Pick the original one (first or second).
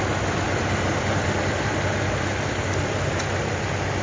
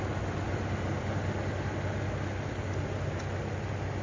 second